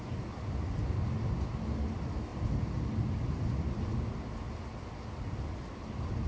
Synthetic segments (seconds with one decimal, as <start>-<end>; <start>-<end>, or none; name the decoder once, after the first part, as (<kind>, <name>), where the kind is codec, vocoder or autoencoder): none